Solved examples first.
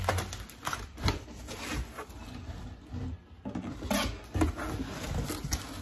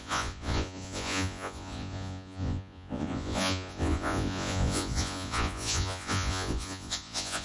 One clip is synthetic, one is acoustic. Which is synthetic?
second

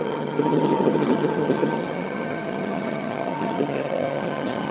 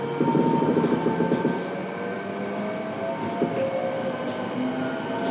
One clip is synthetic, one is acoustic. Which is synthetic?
first